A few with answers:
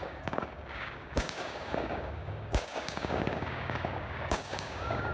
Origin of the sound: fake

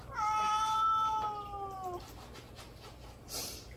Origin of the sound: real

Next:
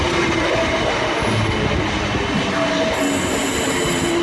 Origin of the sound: real